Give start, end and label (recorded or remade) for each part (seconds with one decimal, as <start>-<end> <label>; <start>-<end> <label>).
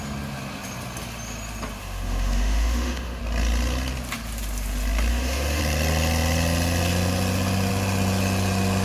0.0-1.8 recorded; 1.8-3.2 remade; 3.2-5.1 recorded; 5.1-5.6 remade; 5.6-8.8 recorded